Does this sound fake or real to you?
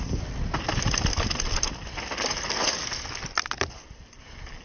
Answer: real